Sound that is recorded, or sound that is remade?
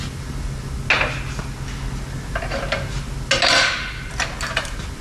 recorded